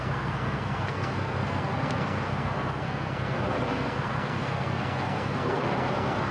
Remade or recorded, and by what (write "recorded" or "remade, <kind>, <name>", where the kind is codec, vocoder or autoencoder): remade, codec, SNAC